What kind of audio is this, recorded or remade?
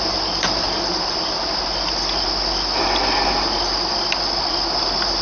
recorded